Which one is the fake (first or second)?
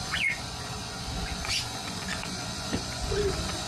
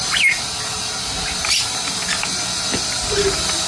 first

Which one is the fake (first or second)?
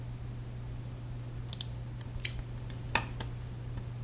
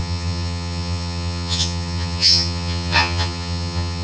second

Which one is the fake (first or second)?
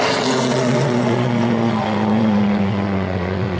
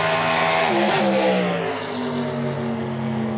first